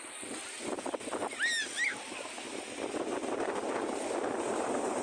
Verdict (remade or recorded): recorded